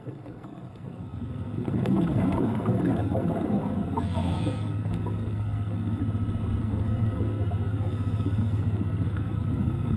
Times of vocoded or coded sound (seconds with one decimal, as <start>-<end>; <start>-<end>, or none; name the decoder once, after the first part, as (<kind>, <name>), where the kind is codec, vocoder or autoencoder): 0.0-6.0 (codec, SNAC); 6.6-10.0

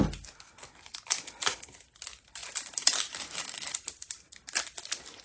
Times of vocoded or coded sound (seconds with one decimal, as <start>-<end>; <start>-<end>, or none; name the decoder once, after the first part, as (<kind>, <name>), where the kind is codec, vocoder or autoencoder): none